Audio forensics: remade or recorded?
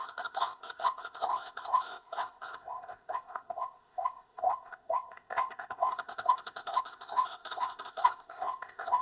remade